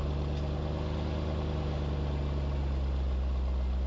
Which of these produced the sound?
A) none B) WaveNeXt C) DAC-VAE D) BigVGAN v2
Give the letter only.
A